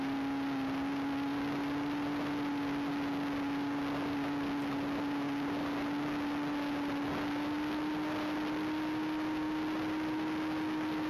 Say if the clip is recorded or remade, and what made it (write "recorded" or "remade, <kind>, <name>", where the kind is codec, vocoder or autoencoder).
recorded